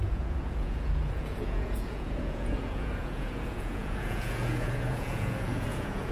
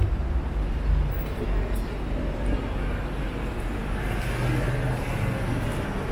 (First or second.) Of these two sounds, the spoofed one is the first